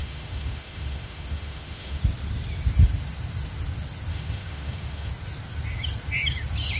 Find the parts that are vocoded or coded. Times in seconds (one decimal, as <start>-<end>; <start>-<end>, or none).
0.0-2.0; 4.1-5.1